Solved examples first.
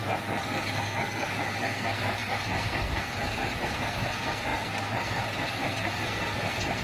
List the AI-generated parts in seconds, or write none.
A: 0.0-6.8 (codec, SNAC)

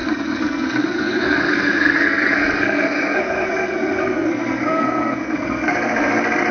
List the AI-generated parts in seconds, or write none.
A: 0.0-6.5 (codec, SNAC)

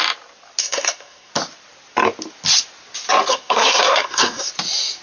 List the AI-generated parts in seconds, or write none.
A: 0.6-1.3 (codec, SNAC); 3.3-4.5